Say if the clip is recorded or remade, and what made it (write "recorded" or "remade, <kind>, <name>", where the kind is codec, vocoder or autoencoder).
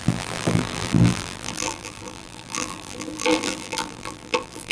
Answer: remade, vocoder, BigVGAN v2